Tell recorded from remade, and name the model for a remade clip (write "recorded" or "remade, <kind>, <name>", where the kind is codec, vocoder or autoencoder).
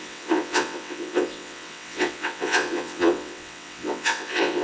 remade, vocoder, WaveNeXt